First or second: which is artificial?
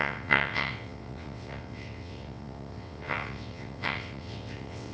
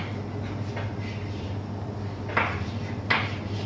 first